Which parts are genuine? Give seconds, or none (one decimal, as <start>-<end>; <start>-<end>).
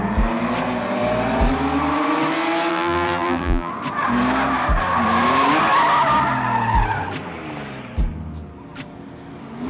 0.0-2.7; 3.7-9.7